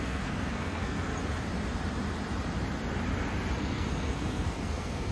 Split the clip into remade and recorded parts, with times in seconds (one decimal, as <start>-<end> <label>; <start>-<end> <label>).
0.0-1.1 remade; 1.1-3.6 recorded; 3.6-5.1 remade